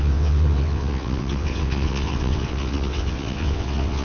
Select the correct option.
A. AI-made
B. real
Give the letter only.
A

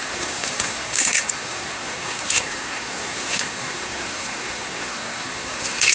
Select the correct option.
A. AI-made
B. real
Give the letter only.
A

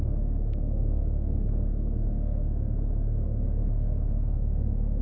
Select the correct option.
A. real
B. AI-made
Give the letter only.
B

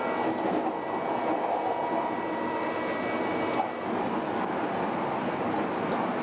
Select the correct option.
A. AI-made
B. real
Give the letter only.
B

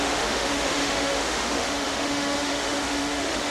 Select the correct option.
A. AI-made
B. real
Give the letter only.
A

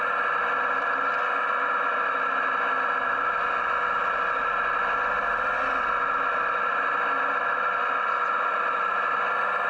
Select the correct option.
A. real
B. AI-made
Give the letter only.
A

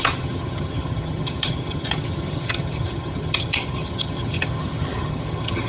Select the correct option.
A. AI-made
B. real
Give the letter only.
A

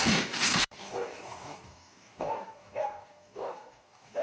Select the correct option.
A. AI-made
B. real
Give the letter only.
A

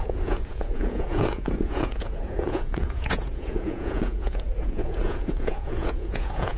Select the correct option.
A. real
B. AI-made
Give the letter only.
B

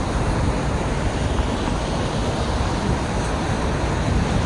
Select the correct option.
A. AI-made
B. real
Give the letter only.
B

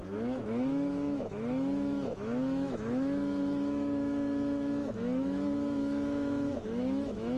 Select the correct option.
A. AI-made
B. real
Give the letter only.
A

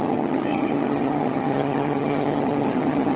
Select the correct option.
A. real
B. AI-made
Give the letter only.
B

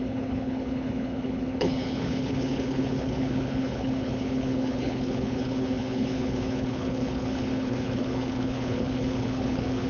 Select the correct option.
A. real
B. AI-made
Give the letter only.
B